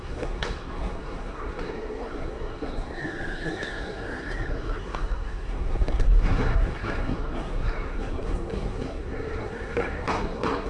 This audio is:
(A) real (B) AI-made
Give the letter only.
B